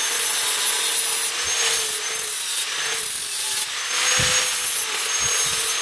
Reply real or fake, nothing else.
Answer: real